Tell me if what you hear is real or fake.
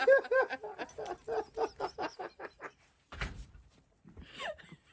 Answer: fake